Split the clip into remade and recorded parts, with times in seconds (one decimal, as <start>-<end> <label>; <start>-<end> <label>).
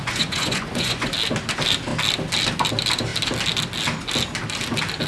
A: 0.0-1.1 remade; 1.1-5.1 recorded